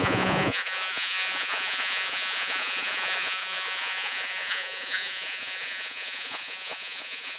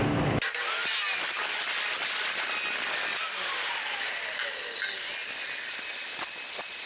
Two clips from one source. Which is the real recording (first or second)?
second